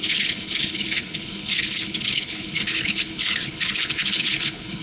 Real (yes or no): no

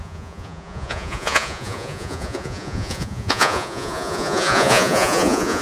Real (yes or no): no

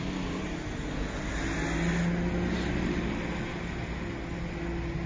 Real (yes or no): yes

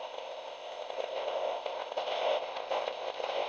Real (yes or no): no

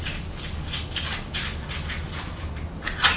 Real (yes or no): yes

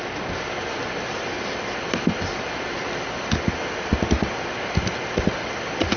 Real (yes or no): yes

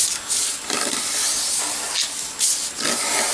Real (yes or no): yes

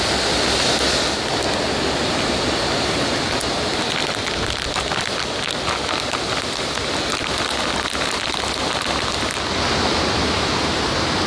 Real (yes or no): yes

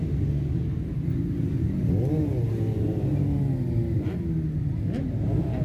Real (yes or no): yes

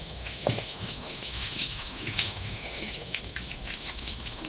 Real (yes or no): no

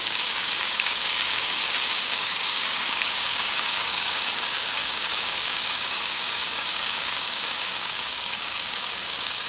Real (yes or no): no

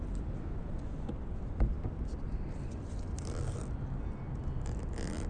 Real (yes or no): yes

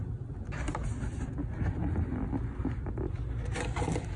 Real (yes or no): yes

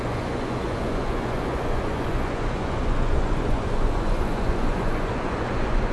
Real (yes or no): no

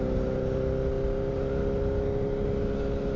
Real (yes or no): yes